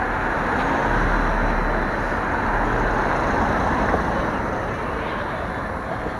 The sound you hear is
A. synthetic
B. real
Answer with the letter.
B